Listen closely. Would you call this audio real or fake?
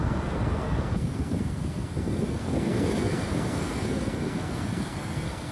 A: fake